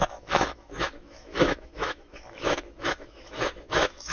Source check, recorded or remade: remade